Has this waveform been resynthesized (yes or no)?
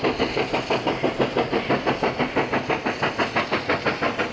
no